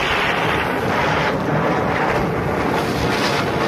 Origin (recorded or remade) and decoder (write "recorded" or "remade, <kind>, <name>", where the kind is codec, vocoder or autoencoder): recorded